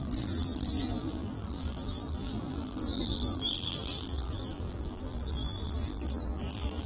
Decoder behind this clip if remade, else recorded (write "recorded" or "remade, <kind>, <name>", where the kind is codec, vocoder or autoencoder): remade, vocoder, BigVGAN v2